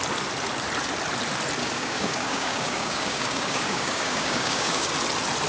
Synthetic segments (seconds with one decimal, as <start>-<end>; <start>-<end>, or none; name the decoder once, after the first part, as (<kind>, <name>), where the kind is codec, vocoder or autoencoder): 1.6-4.9 (codec, DAC)